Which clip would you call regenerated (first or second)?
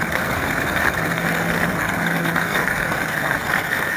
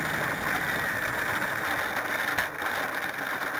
first